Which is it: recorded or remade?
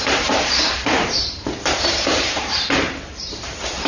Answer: remade